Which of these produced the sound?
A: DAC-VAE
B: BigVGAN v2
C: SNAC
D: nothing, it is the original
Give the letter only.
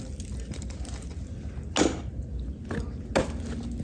D